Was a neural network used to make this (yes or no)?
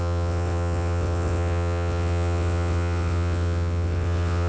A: yes